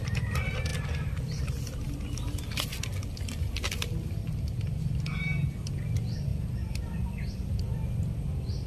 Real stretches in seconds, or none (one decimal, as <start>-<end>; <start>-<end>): 0.0-8.7